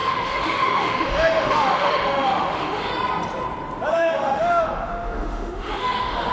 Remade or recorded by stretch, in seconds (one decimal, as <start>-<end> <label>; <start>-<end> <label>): 0.0-2.9 remade; 2.9-3.9 recorded; 3.9-6.3 remade